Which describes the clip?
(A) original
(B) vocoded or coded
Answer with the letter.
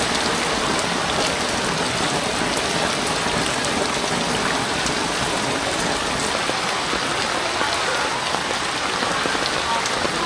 A